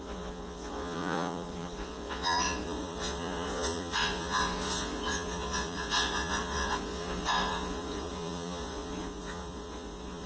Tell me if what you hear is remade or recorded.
remade